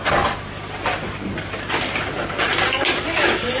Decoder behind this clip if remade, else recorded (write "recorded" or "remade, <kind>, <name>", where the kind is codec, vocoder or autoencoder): recorded